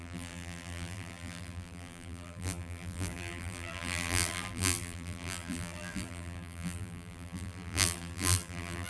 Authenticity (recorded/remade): remade